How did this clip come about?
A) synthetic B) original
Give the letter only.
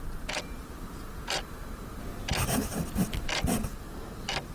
B